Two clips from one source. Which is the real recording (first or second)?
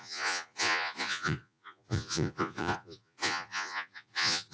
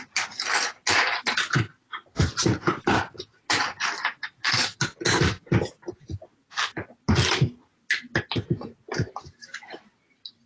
second